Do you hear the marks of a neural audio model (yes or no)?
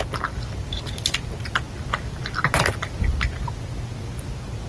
no